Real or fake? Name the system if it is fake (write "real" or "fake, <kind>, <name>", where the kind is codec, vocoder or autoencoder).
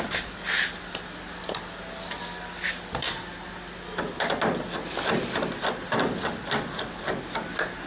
real